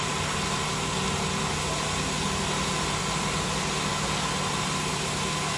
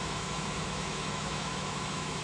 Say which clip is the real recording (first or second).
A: first